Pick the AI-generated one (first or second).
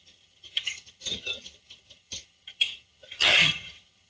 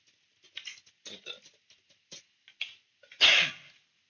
first